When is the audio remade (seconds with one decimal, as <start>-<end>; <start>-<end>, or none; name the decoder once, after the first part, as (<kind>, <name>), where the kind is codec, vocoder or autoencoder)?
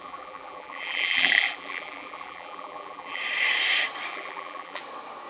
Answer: 0.0-3.2 (vocoder, BigVGAN v2); 4.1-4.8